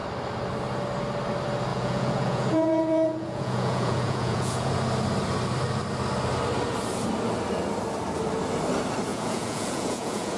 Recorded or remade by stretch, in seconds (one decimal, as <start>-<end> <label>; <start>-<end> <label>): 0.0-1.7 recorded; 1.7-4.7 remade; 4.7-9.1 recorded; 9.1-10.4 remade